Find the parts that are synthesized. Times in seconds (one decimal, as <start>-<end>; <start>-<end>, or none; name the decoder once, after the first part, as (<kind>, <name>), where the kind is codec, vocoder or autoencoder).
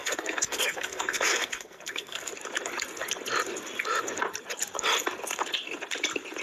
0.0-2.3 (codec, SNAC)